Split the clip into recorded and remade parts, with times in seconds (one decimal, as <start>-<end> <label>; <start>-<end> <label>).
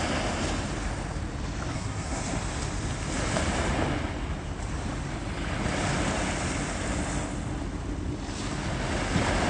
0.0-1.7 recorded; 1.7-2.2 remade; 2.2-9.5 recorded